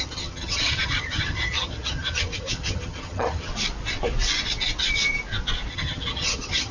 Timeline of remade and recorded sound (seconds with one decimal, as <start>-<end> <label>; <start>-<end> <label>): 0.0-3.5 remade; 3.5-5.7 recorded; 5.7-6.7 remade